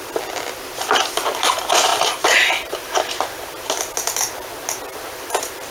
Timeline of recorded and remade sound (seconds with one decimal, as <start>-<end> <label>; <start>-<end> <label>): 0.0-1.9 recorded; 1.9-3.1 remade; 3.1-5.7 recorded